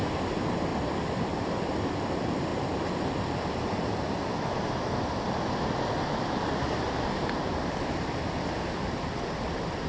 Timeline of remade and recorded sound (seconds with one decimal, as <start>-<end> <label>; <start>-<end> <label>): 0.0-0.7 remade; 0.7-1.3 recorded; 1.3-2.5 remade; 2.5-7.6 recorded; 7.6-9.9 remade